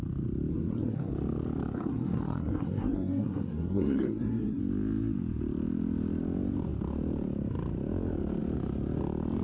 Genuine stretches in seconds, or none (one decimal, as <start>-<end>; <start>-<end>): 0.0-0.5; 1.1-1.7; 4.6-9.4